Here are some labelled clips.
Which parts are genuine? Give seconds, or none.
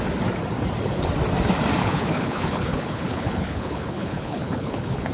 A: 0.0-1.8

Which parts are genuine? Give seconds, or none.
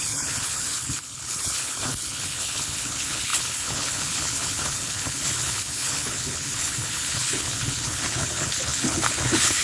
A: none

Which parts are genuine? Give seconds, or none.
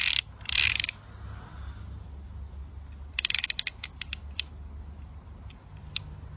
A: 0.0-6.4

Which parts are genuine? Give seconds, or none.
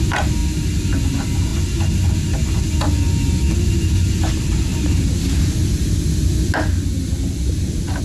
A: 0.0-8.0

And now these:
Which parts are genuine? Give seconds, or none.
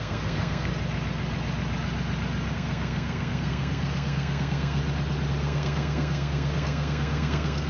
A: 0.7-2.5; 4.8-5.3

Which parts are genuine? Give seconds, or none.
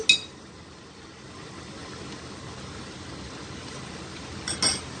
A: 0.0-5.0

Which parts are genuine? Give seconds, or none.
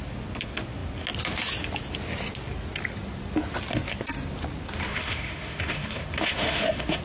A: 0.0-4.9